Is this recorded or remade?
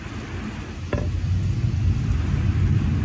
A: recorded